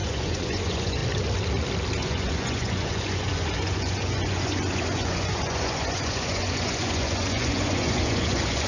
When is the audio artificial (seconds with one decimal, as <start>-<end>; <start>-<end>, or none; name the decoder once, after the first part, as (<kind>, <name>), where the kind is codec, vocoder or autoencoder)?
0.0-1.0 (vocoder, Vocos); 2.0-8.7